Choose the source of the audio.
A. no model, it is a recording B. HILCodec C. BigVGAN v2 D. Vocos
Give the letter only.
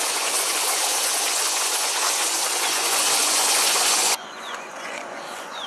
D